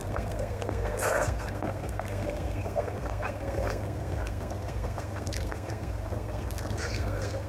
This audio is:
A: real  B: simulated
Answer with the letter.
B